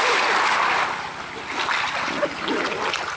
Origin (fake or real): real